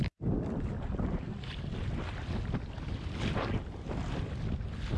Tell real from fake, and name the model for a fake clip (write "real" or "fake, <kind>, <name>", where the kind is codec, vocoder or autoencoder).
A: real